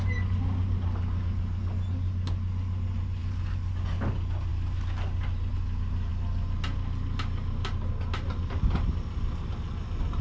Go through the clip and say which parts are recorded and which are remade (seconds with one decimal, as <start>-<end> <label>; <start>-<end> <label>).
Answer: 0.0-10.2 recorded